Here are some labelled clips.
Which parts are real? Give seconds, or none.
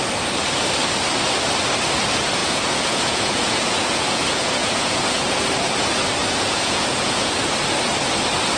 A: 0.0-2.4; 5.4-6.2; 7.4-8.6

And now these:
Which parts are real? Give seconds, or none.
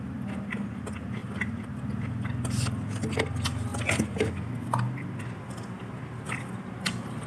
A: 0.0-7.3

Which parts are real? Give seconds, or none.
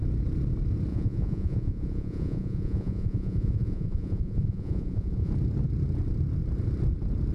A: 0.0-0.9; 5.3-7.3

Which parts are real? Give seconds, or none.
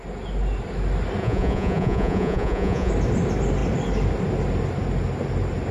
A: 0.0-1.2; 2.9-5.7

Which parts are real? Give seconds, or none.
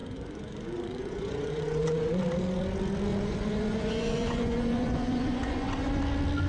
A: 2.2-3.1; 6.0-6.5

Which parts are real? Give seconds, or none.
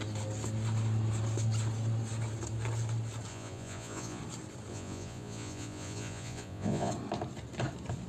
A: 0.0-3.3; 4.2-4.7; 6.9-8.1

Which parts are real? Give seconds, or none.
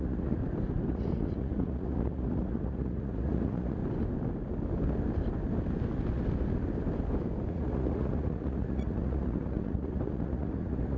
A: 0.4-0.9; 3.8-7.5